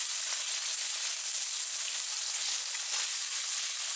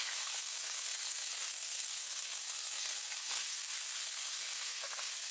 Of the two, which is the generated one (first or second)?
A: second